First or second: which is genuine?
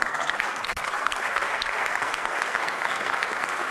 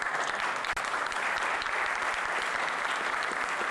second